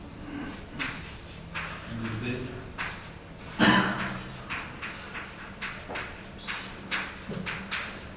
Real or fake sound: real